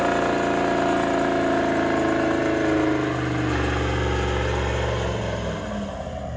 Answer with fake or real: real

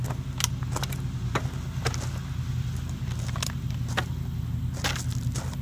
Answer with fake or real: real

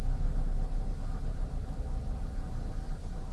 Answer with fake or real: real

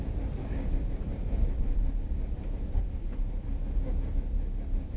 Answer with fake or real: real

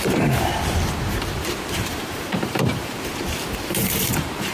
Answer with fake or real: fake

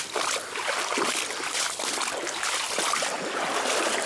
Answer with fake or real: real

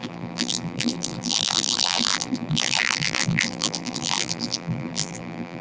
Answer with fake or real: fake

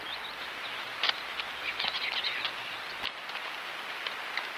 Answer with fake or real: real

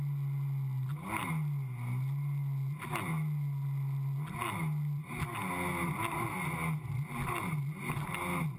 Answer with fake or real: real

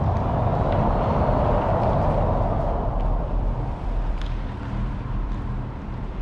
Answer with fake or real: fake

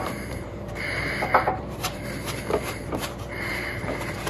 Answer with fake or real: fake